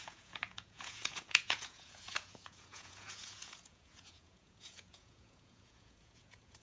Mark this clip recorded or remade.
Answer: remade